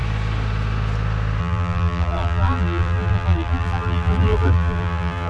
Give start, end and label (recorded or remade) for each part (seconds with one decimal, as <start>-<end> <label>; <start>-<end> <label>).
0.0-1.4 recorded; 1.4-5.3 remade